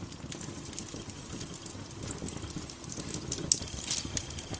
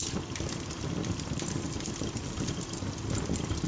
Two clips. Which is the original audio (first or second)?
first